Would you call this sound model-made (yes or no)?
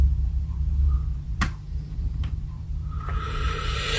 yes